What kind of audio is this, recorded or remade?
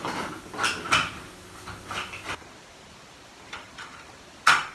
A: recorded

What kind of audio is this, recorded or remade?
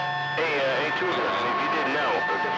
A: recorded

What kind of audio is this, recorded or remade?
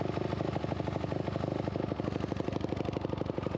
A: recorded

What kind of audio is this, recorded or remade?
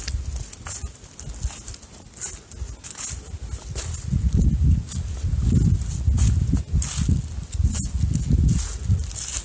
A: recorded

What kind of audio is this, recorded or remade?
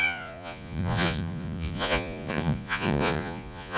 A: remade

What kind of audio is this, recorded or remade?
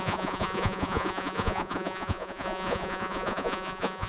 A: remade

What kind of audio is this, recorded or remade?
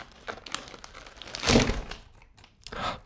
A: recorded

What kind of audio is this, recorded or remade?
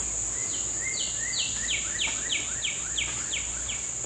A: recorded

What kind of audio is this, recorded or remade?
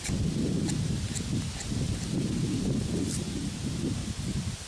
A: recorded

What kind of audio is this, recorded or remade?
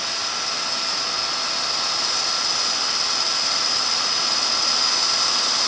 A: recorded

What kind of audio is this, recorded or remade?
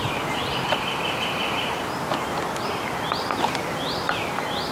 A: recorded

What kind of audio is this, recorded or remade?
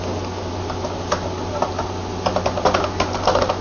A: recorded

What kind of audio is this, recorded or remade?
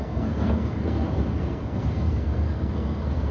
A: remade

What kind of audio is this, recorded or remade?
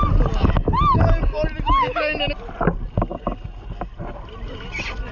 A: recorded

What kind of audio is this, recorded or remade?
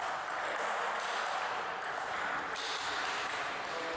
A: recorded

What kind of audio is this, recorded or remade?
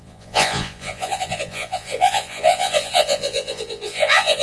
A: remade